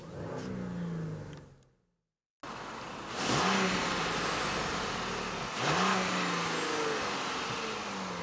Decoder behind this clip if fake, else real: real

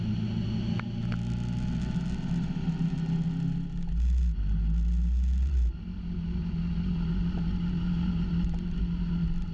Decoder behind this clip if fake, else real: real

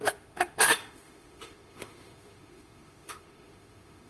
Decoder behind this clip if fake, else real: fake, autoencoder, DAC-VAE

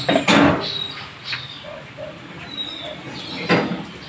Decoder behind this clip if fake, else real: real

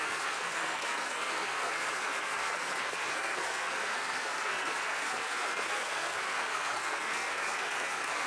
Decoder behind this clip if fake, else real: fake, codec, SNAC